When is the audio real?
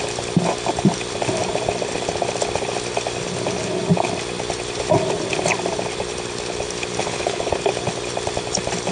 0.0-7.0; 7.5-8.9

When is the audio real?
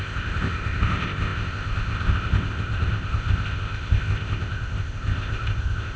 none